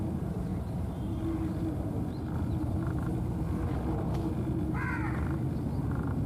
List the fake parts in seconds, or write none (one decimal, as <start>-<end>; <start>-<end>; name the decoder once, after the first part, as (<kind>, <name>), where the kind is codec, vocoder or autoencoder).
none